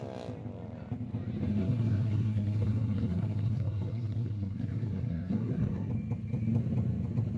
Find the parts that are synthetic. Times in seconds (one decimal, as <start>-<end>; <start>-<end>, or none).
1.5-5.9